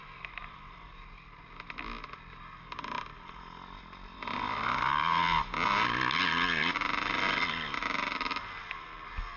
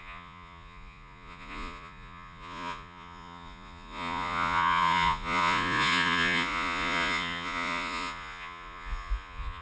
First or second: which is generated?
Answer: second